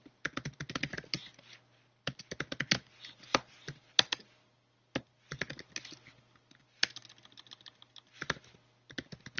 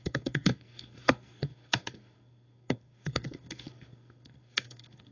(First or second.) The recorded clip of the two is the first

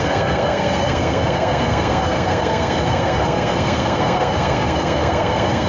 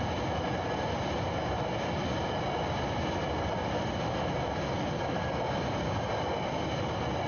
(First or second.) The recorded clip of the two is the second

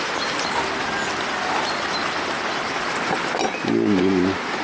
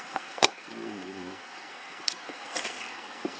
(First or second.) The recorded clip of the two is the first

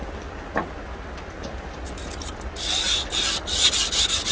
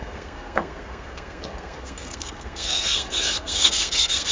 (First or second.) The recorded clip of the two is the first